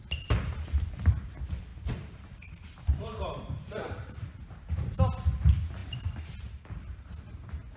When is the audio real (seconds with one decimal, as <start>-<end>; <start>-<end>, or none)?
0.0-1.7; 4.5-7.8